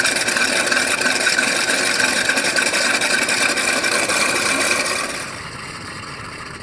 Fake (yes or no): yes